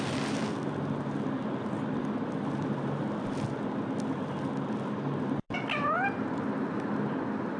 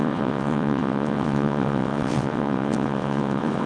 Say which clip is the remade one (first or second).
second